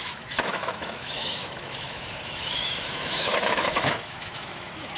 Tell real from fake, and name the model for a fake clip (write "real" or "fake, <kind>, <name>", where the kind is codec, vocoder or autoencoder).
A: fake, autoencoder, DAC-VAE